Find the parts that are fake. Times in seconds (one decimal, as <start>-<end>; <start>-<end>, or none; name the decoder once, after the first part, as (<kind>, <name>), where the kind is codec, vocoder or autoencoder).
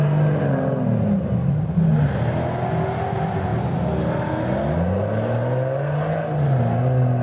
none